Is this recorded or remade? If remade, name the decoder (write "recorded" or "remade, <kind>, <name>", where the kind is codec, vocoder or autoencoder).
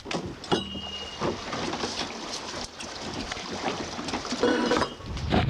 recorded